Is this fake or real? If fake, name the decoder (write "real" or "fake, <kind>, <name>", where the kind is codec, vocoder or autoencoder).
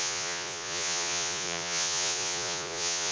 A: fake, vocoder, Vocos